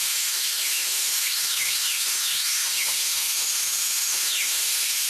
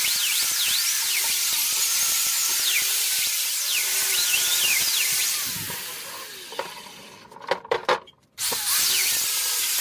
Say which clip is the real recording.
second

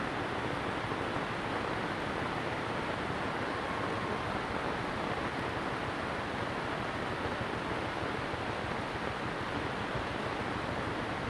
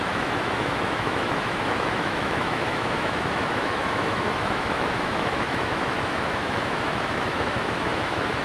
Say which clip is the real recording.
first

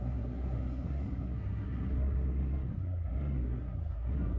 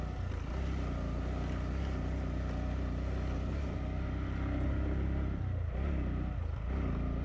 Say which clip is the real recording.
second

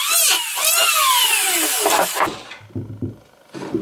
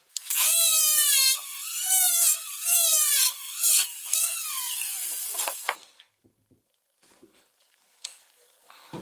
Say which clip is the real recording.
first